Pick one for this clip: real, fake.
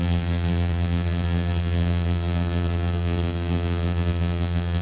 fake